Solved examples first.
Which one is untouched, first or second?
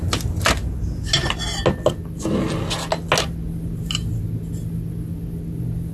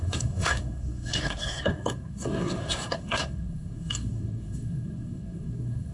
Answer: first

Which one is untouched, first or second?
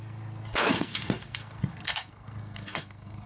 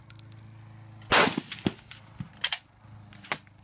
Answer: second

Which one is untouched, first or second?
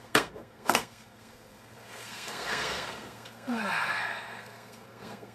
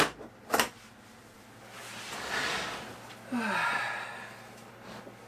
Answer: second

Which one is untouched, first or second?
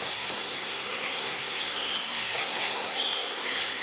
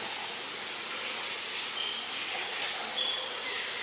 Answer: second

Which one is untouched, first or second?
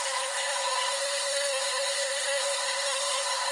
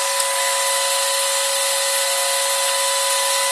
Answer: second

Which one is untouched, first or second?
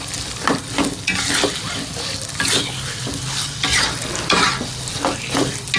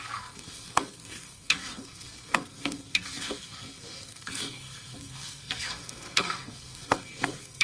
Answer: first